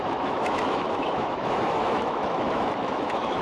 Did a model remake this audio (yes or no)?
yes